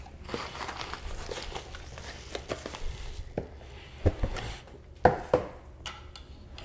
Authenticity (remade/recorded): recorded